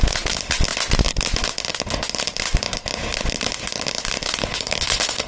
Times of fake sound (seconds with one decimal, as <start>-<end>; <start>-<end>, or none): 4.4-5.3